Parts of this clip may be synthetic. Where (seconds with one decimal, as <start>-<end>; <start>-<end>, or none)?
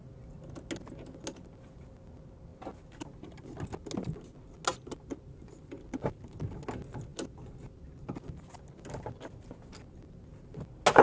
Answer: none